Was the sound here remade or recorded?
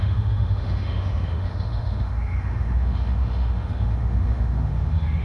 remade